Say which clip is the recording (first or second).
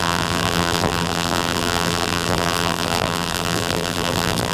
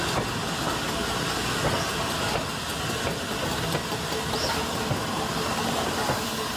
second